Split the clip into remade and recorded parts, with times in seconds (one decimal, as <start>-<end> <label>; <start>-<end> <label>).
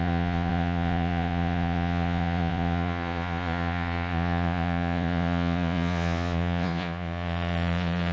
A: 0.0-8.1 remade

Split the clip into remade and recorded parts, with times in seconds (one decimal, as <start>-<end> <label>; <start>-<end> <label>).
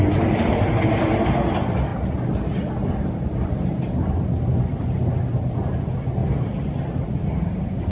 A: 0.0-1.9 recorded; 1.9-4.4 remade; 4.4-6.2 recorded; 6.2-6.7 remade; 6.7-7.9 recorded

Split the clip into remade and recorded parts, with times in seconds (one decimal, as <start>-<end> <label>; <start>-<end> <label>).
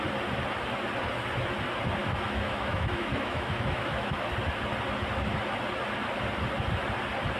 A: 0.0-2.0 recorded; 2.0-4.3 remade; 4.3-7.4 recorded